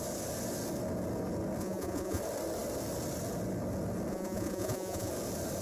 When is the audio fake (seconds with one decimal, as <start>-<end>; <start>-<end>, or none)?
1.6-2.2; 4.1-5.1